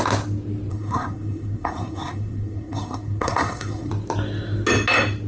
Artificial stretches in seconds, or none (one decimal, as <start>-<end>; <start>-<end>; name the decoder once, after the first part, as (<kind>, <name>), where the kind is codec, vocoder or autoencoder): 0.7-3.9 (codec, SNAC)